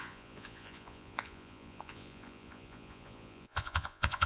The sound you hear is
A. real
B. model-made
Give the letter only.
B